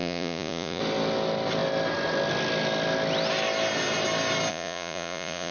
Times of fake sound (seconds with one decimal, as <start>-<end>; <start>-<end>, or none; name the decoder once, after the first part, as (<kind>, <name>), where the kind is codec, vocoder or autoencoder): 0.0-0.8 (vocoder, Vocos); 4.5-5.5